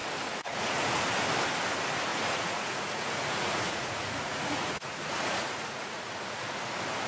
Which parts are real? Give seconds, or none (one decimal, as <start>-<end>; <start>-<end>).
1.0-2.1; 6.4-7.1